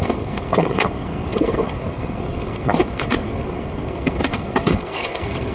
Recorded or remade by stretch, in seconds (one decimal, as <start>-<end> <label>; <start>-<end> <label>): 0.0-5.5 remade